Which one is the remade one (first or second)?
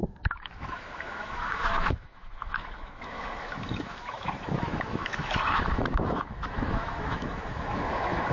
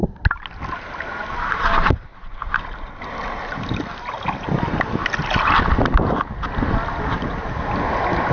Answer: first